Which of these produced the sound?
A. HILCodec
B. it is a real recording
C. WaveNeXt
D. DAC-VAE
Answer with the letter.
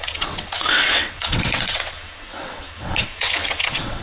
C